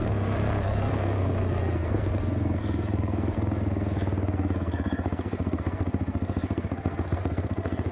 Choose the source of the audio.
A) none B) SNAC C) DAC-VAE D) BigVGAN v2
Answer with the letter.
B